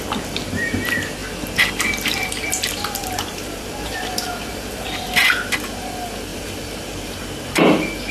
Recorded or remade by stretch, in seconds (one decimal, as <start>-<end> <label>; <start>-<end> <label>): 0.0-3.0 recorded; 3.0-4.0 remade; 4.0-6.3 recorded; 6.3-7.2 remade; 7.2-8.1 recorded